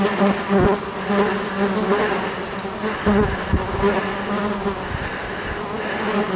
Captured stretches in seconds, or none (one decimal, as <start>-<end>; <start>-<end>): 0.0-6.4